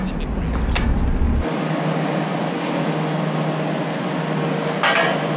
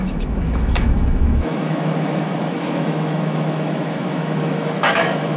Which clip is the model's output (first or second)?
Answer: second